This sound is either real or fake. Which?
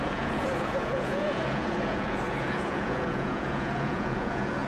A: fake